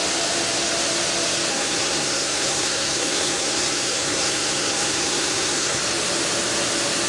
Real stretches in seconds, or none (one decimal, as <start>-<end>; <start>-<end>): 0.0-1.5; 5.8-7.1